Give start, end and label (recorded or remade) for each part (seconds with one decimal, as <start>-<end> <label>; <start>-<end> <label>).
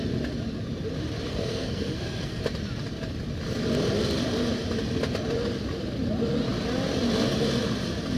0.0-1.3 recorded; 1.3-2.4 remade; 2.4-8.2 recorded